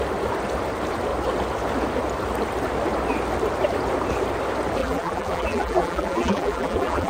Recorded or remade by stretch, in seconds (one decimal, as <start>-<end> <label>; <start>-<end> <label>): 0.0-4.8 recorded; 4.8-7.1 remade